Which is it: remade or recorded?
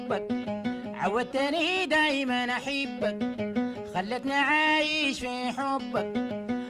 recorded